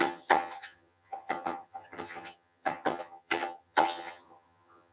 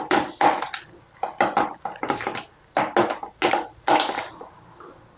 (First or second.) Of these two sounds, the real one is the second